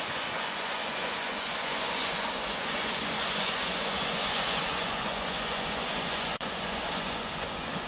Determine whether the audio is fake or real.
fake